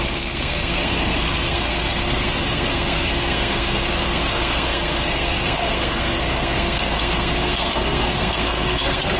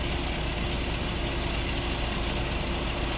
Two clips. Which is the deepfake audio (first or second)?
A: first